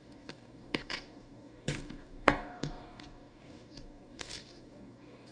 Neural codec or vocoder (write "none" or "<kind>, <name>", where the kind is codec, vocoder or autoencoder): codec, DAC